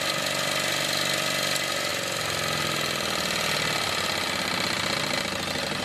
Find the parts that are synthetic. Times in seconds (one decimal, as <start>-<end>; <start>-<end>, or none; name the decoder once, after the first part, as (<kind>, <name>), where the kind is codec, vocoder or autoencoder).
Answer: none